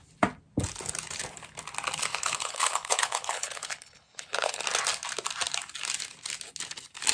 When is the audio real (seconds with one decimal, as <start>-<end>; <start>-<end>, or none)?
0.0-2.1; 4.6-7.1